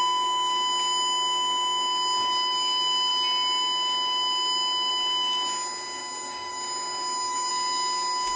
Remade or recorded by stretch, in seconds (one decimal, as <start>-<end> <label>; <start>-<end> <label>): 0.0-6.0 recorded; 6.0-7.5 remade; 7.5-8.4 recorded